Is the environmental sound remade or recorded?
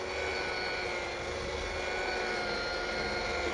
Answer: recorded